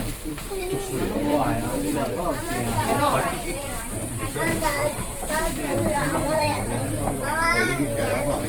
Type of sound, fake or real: fake